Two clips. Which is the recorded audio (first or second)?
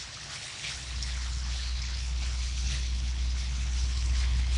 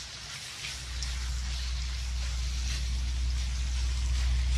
second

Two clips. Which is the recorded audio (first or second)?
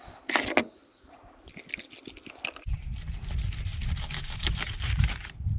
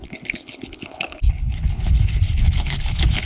first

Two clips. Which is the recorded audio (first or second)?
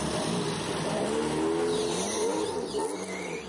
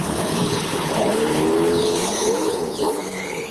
first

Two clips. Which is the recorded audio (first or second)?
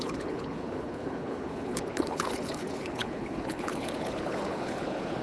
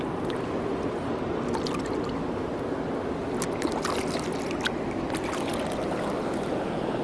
second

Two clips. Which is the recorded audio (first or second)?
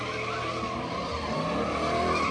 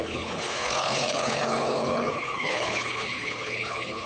first